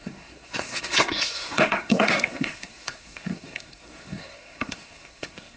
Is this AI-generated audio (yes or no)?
yes